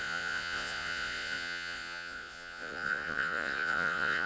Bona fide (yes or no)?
no